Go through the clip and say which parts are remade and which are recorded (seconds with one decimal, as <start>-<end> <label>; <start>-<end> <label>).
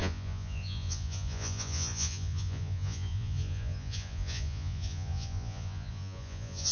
0.0-6.7 remade